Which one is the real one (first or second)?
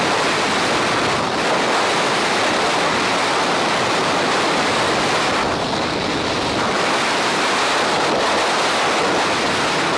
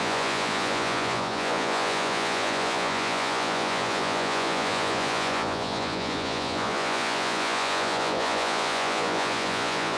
first